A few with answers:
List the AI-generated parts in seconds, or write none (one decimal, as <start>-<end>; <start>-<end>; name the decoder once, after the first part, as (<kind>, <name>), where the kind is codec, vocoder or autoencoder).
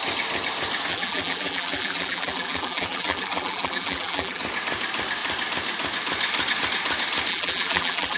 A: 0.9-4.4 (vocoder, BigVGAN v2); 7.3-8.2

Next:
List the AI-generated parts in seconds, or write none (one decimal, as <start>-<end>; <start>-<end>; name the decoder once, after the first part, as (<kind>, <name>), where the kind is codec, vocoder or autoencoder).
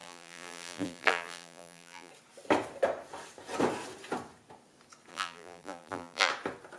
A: 0.0-2.1 (vocoder, BigVGAN v2); 5.1-6.3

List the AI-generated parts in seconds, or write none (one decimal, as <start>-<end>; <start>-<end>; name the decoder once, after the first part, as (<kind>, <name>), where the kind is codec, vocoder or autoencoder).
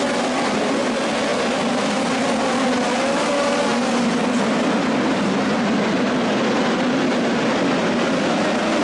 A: 1.3-2.4 (vocoder, BigVGAN v2)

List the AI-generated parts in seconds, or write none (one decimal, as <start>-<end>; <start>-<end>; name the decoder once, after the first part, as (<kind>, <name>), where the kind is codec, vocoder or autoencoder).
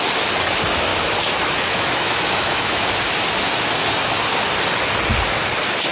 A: 0.9-2.9 (autoencoder, DAC-VAE)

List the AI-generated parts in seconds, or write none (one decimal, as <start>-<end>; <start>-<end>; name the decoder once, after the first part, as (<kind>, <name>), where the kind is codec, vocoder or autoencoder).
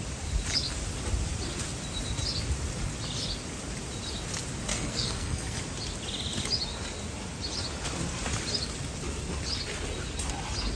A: 4.7-5.6 (codec, SNAC)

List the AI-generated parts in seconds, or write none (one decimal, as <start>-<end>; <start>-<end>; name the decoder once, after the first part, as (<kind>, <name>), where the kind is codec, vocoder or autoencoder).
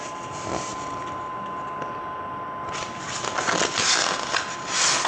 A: none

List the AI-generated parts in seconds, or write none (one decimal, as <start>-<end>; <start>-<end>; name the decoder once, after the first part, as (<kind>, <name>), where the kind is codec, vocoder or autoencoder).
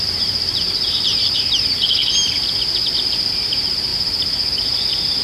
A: 0.0-2.0 (vocoder, BigVGAN v2); 3.0-3.9